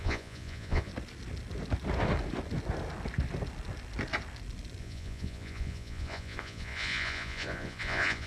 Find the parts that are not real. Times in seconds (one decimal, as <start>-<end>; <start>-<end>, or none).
0.0-0.9; 4.8-8.3